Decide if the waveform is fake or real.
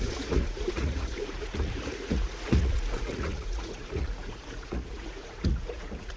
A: fake